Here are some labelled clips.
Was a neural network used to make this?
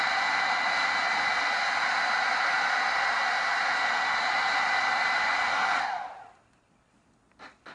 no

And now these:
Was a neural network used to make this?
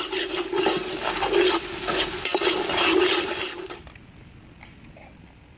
no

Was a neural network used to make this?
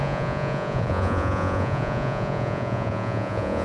yes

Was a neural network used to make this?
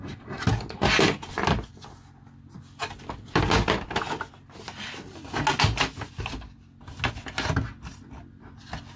no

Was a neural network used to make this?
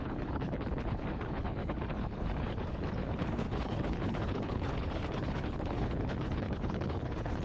yes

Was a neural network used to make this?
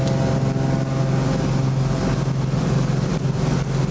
no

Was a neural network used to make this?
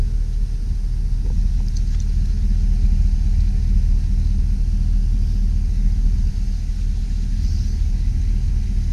no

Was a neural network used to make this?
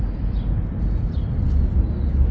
no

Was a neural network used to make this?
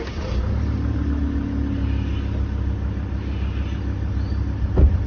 no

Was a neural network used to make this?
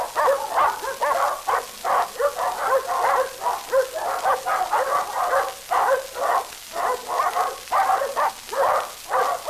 no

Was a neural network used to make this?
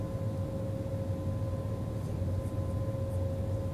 no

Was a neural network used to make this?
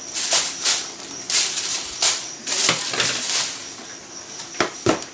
no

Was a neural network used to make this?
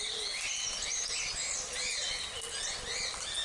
no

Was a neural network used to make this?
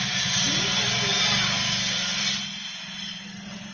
no